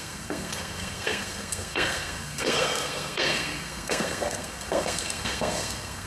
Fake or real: fake